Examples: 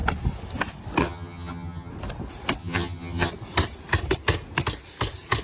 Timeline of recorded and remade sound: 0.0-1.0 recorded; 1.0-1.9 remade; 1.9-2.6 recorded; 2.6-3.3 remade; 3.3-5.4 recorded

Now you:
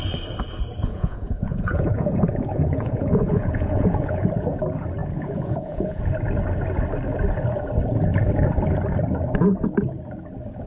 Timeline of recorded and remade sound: 0.0-0.8 recorded; 0.8-4.3 remade; 4.3-5.0 recorded; 5.0-6.0 remade; 6.0-10.7 recorded